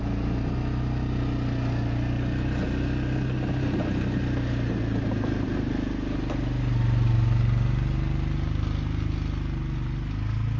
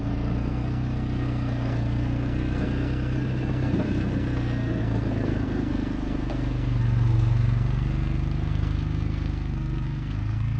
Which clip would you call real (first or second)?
first